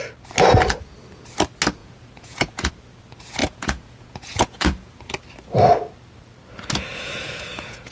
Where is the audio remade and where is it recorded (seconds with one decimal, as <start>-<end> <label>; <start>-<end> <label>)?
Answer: 0.0-1.8 recorded; 1.8-2.7 remade; 2.7-3.4 recorded; 3.4-5.1 remade; 5.1-6.9 recorded; 6.9-7.9 remade

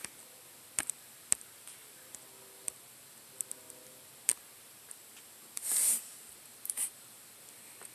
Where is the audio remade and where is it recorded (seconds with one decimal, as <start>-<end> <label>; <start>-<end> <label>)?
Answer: 0.0-7.9 recorded

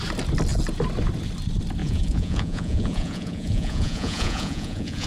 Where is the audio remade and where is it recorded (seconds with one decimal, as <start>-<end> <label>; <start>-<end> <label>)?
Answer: 0.0-1.8 recorded; 1.8-5.1 remade

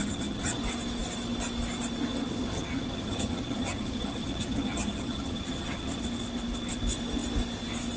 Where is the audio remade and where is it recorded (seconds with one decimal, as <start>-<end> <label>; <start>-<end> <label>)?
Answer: 0.0-0.6 remade; 0.6-2.4 recorded; 2.4-6.0 remade; 6.0-8.0 recorded

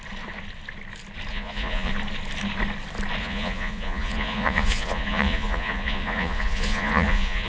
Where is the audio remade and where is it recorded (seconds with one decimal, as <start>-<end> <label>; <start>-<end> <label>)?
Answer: 0.0-1.3 recorded; 1.3-1.9 remade; 1.9-3.2 recorded; 3.2-7.5 remade

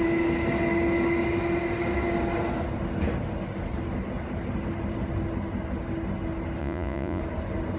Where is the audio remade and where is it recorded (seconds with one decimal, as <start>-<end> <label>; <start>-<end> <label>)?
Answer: 0.0-6.6 recorded; 6.6-7.2 remade; 7.2-7.8 recorded